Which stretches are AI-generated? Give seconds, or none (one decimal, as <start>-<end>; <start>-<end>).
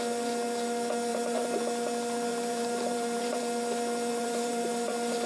1.1-1.6; 2.3-3.4; 4.1-5.3